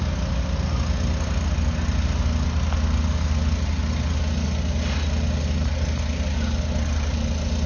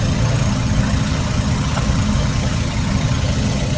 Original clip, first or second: first